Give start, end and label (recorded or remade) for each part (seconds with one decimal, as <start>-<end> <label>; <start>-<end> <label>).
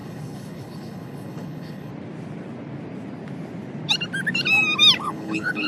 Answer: 0.0-1.9 remade; 1.9-5.0 recorded; 5.0-5.7 remade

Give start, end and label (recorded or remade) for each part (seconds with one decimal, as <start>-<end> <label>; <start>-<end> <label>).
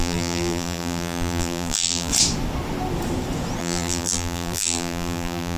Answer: 0.0-2.1 remade; 2.1-3.6 recorded; 3.6-5.6 remade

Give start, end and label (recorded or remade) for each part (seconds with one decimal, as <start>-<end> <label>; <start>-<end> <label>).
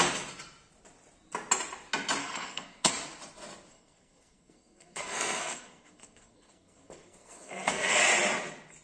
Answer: 0.0-2.2 recorded; 2.2-2.9 remade; 2.9-3.7 recorded; 3.7-8.0 remade; 8.0-8.8 recorded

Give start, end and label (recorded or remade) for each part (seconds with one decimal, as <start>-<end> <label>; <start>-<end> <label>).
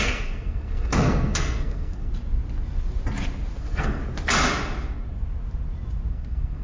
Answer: 0.0-2.1 remade; 2.1-3.6 recorded; 3.6-4.0 remade; 4.0-6.1 recorded; 6.1-6.6 remade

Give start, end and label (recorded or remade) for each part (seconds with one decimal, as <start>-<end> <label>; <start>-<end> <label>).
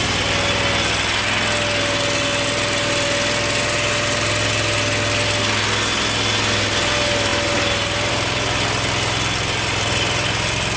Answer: 0.0-10.8 recorded